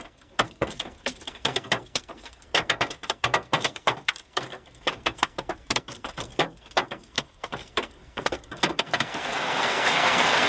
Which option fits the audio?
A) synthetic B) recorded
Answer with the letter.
A